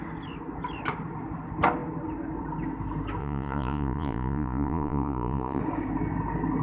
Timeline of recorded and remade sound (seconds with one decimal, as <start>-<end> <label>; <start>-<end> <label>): 0.0-3.2 recorded; 3.2-5.6 remade; 5.6-6.6 recorded